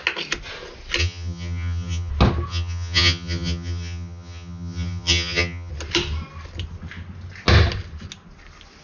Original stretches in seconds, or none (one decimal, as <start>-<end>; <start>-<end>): 0.0-1.0; 2.1-2.5; 5.7-8.8